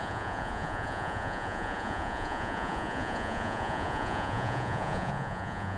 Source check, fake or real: fake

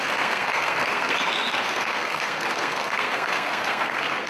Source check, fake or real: fake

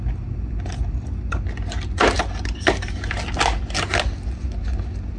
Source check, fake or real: real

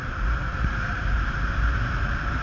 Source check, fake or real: fake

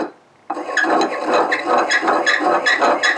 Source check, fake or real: real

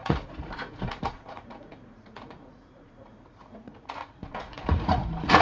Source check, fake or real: fake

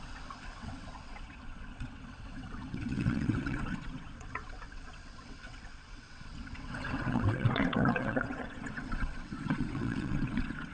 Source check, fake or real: fake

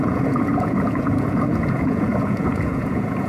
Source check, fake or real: fake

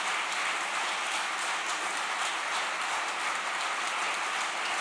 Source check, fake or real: real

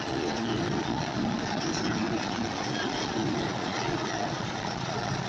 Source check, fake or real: fake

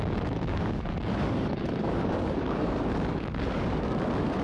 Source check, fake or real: fake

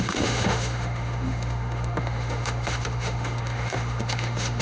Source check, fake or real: fake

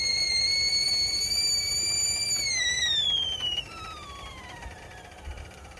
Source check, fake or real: fake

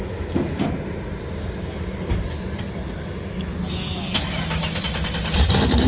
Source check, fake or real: real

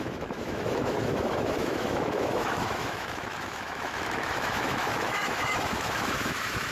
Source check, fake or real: fake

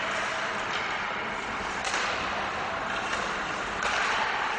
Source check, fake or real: real